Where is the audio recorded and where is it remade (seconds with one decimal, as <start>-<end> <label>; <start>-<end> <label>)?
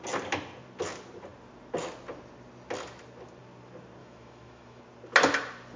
0.0-4.0 recorded; 4.0-4.8 remade; 4.8-5.8 recorded